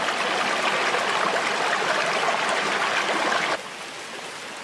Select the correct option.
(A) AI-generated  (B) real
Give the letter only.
B